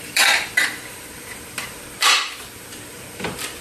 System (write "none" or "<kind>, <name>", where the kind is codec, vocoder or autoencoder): vocoder, BigVGAN v2